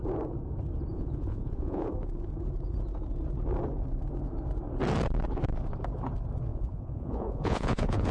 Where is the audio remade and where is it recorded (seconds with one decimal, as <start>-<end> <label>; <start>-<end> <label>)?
0.0-0.9 recorded; 0.9-1.9 remade; 1.9-6.5 recorded; 6.5-8.1 remade